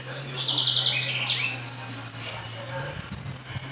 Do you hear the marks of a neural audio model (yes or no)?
no